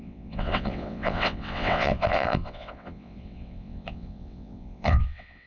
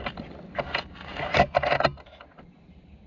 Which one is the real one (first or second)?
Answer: second